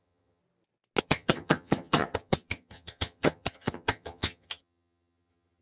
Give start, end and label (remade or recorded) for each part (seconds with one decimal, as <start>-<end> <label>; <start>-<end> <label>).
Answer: 0.0-0.4 remade; 0.4-1.0 recorded; 1.0-5.6 remade